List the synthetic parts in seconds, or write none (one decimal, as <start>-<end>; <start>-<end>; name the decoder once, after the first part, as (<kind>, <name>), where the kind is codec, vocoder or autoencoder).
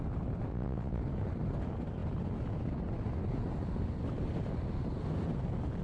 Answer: 0.5-1.0 (vocoder, WaveNeXt)